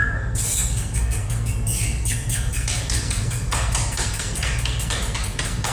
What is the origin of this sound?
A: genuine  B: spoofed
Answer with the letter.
B